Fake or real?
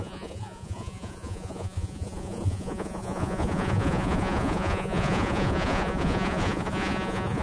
fake